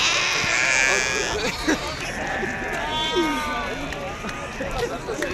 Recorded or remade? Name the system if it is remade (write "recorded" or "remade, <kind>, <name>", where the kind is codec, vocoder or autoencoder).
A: recorded